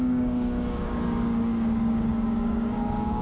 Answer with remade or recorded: remade